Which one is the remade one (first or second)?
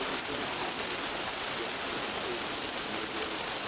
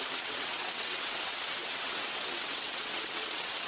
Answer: second